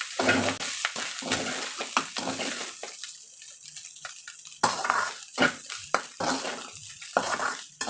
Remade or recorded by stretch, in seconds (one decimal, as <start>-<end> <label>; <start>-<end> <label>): 0.0-7.9 recorded